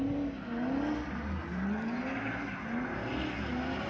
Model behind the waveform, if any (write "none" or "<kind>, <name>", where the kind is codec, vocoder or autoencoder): none